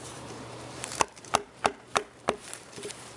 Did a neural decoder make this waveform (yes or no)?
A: yes